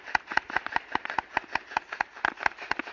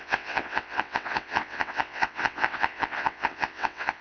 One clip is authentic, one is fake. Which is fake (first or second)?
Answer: second